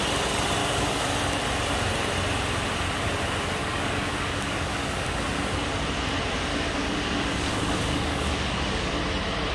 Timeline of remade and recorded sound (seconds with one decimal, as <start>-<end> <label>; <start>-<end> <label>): 0.0-0.6 recorded; 0.6-1.1 remade; 1.1-3.6 recorded; 3.6-5.2 remade; 5.2-6.5 recorded; 6.5-8.9 remade; 8.9-9.5 recorded